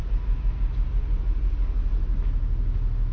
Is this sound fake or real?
real